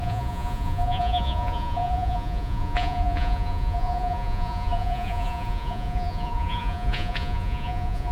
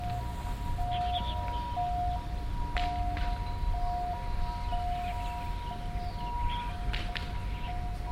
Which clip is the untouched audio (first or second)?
second